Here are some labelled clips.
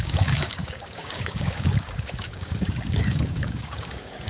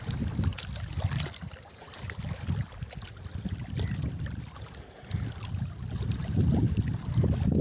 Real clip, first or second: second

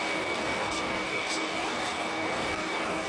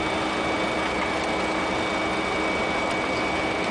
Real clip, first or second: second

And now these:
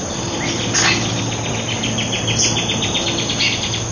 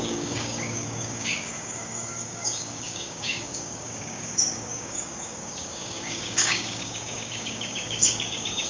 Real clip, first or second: first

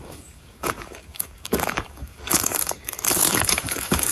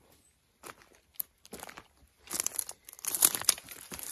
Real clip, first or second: second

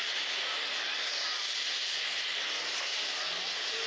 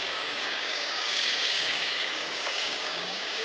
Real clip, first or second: first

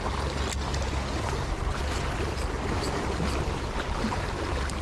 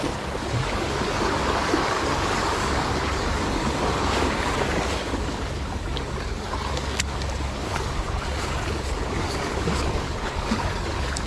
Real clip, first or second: first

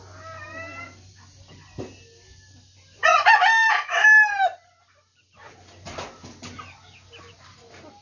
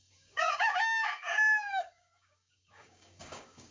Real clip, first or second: first